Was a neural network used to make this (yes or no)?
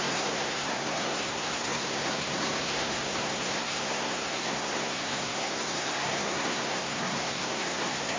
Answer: yes